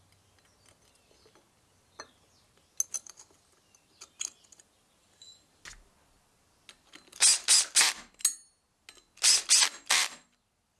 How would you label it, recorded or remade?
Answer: recorded